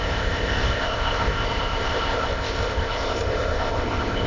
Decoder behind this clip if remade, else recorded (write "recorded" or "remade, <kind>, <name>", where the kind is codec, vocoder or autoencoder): remade, codec, ZipCodec